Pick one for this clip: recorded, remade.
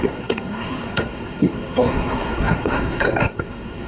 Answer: remade